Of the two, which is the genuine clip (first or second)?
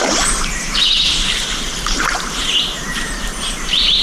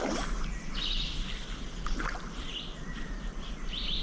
second